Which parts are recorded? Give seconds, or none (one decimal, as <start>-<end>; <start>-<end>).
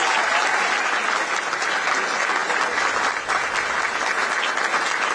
0.0-5.1